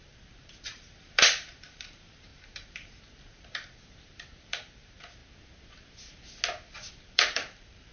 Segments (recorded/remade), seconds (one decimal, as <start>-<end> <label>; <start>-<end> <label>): 0.0-5.2 remade; 5.2-7.0 recorded; 7.0-7.9 remade

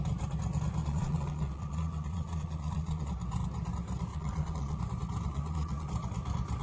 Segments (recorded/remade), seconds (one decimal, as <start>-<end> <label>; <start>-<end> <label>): 0.0-0.8 recorded; 0.8-3.1 remade; 3.1-4.1 recorded; 4.1-4.8 remade; 4.8-5.3 recorded; 5.3-5.9 remade; 5.9-6.6 recorded

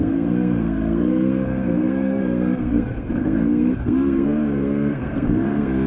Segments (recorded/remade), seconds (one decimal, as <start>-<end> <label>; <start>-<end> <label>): 0.0-5.9 remade

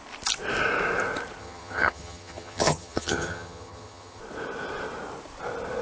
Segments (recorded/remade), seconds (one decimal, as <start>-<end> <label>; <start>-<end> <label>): 0.0-1.4 recorded; 1.4-4.2 remade; 4.2-5.8 recorded

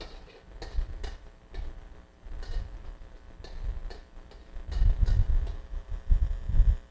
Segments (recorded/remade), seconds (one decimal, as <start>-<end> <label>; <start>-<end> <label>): 0.0-6.9 recorded

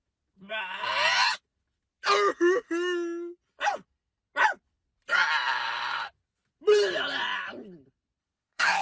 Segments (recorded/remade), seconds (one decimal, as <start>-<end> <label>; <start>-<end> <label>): 0.0-8.2 recorded; 8.2-8.8 remade

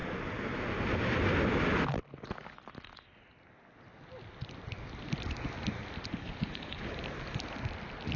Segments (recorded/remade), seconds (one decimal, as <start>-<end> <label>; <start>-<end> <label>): 0.0-6.2 recorded; 6.2-6.9 remade; 6.9-8.2 recorded

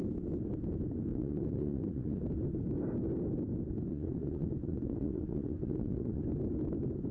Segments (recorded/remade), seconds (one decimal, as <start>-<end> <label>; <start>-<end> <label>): 0.0-1.1 recorded; 1.1-2.2 remade; 2.2-3.9 recorded; 3.9-6.2 remade; 6.2-7.1 recorded